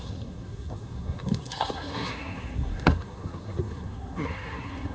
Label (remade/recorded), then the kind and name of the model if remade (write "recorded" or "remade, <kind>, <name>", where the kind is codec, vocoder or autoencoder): remade, codec, SNAC